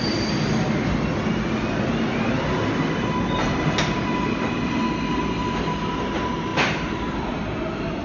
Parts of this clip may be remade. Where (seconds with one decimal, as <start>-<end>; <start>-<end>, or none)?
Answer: none